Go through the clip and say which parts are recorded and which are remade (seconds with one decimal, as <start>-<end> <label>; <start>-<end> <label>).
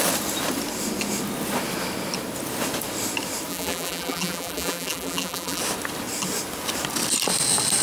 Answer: 0.0-3.5 recorded; 3.5-5.6 remade; 5.6-7.8 recorded